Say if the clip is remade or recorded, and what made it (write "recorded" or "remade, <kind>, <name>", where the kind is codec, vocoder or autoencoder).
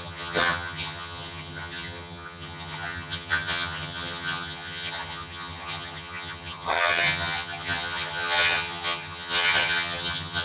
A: remade, vocoder, HiFi-GAN